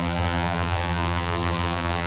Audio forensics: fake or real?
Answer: fake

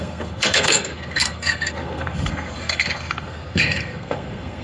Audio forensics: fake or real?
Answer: fake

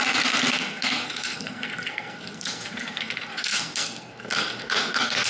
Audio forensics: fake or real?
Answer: fake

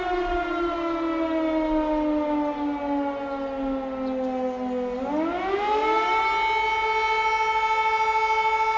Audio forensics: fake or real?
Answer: real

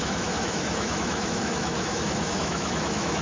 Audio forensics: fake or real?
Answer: fake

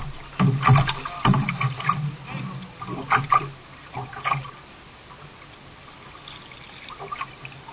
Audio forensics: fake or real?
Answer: real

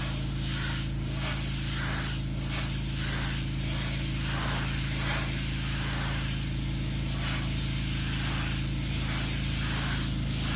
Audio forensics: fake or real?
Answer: real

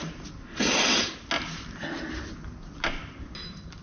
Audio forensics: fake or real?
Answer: real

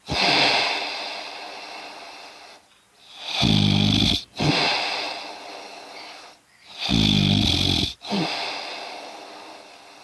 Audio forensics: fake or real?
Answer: real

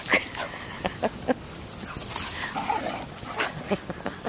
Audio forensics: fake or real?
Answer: real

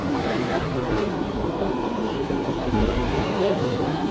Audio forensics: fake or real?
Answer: fake